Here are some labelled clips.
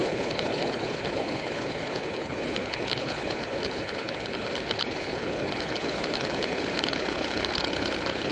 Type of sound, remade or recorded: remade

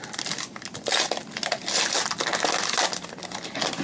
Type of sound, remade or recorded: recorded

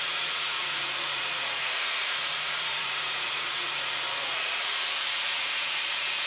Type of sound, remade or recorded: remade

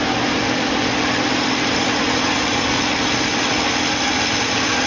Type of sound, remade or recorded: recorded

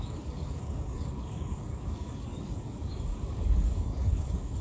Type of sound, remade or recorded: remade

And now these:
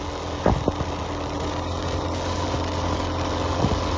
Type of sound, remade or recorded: recorded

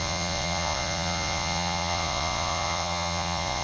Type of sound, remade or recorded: remade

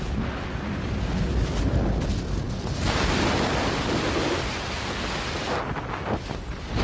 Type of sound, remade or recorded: recorded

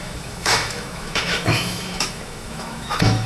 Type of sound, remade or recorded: remade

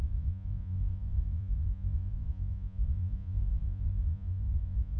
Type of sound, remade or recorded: remade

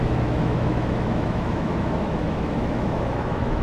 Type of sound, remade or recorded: remade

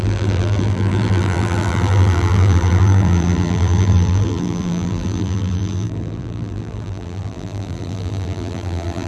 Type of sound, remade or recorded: remade